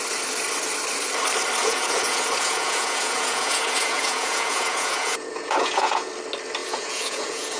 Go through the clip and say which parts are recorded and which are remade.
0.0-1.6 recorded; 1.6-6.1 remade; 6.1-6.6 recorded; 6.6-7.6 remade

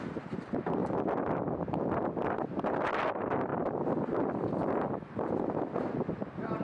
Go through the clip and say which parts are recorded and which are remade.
0.0-6.6 recorded

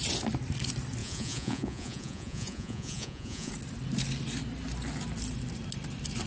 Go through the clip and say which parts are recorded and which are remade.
0.0-1.0 recorded; 1.0-3.5 remade; 3.5-6.3 recorded

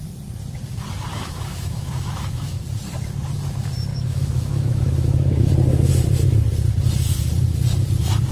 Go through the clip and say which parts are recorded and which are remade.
0.0-1.1 recorded; 1.1-2.6 remade; 2.6-3.9 recorded; 3.9-5.5 remade; 5.5-8.3 recorded

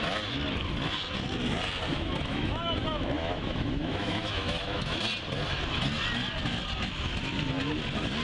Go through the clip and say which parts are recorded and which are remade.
0.0-1.9 recorded; 1.9-5.0 remade; 5.0-8.2 recorded

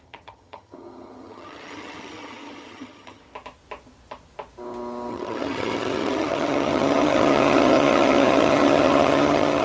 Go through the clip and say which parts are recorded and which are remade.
0.0-3.2 remade; 3.2-5.1 recorded; 5.1-9.6 remade

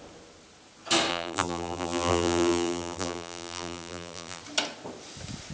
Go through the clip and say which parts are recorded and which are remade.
0.0-1.1 recorded; 1.1-4.4 remade; 4.4-5.5 recorded

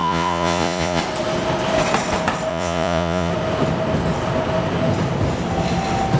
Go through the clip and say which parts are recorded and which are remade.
0.0-1.0 remade; 1.0-2.5 recorded; 2.5-3.3 remade; 3.3-6.2 recorded